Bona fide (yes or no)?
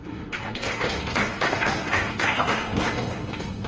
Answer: no